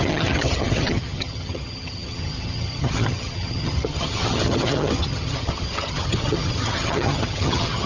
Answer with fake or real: fake